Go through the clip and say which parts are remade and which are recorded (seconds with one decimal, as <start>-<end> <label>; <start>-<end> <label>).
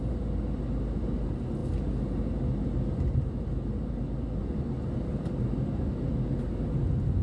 0.0-7.2 recorded